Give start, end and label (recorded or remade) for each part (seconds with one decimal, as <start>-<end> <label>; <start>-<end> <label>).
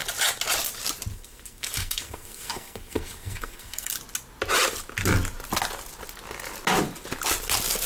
0.0-1.1 recorded; 1.1-3.9 remade; 3.9-7.9 recorded